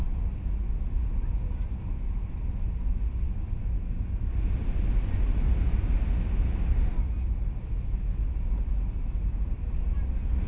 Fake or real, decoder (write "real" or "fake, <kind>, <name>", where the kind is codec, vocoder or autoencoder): real